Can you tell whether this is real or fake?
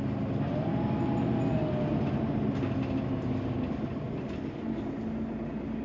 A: real